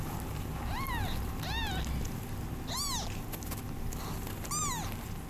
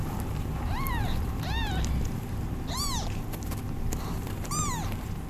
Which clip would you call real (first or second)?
first